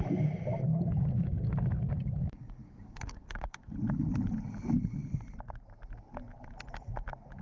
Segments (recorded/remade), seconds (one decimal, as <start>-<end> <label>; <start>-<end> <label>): 0.0-0.7 recorded; 0.7-3.6 remade; 3.6-7.4 recorded

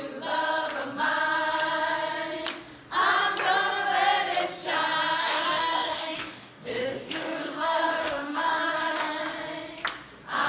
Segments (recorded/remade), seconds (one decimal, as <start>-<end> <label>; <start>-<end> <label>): 0.0-5.2 recorded; 5.2-9.2 remade; 9.2-10.5 recorded

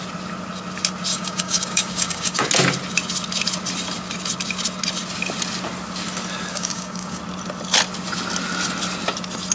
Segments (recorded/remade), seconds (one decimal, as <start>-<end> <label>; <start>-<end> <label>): 0.0-1.1 recorded; 1.1-2.4 remade; 2.4-6.5 recorded; 6.5-7.2 remade; 7.2-9.5 recorded

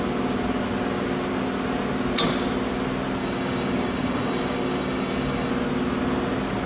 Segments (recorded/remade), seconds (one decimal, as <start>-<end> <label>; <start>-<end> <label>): 0.0-3.2 recorded; 3.2-5.5 remade; 5.5-6.7 recorded

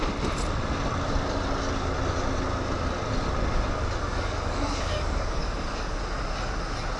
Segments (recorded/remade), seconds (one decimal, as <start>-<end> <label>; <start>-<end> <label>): 0.0-4.1 recorded; 4.1-6.0 remade; 6.0-7.0 recorded

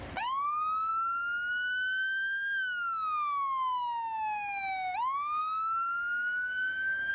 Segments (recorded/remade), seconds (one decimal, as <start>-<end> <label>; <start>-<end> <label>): 0.0-5.4 recorded; 5.4-7.1 remade

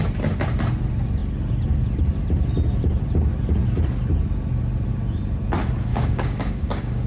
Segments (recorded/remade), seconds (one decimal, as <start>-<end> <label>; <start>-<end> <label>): 0.0-5.9 recorded; 5.9-7.1 remade